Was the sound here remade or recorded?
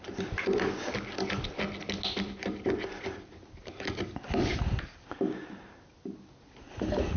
recorded